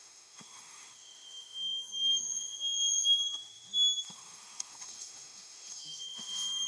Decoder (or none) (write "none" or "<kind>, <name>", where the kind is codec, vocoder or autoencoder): autoencoder, DAC-VAE